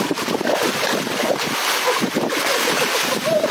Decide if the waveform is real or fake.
real